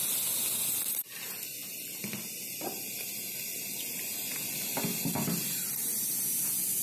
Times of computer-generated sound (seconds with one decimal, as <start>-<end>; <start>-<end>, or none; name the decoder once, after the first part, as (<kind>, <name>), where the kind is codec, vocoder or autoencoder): none